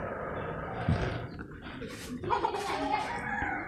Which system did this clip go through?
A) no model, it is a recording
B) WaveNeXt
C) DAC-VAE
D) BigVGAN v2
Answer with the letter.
A